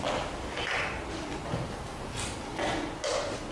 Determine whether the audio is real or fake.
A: real